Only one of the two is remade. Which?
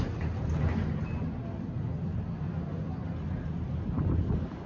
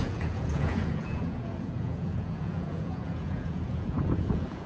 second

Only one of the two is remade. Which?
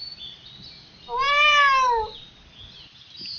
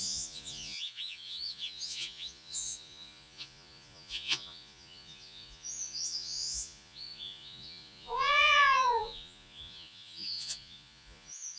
second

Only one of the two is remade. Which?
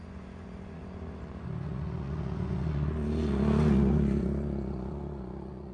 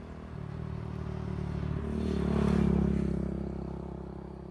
first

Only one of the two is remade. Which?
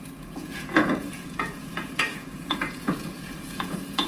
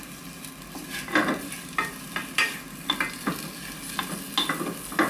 first